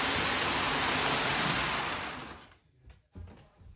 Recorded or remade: recorded